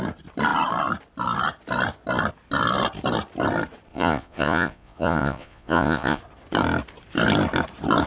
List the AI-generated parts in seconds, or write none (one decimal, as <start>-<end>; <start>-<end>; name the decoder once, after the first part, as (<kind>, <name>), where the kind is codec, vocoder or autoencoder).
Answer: 3.9-6.2 (vocoder, Vocos)